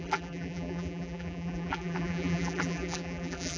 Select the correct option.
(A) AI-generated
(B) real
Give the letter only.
A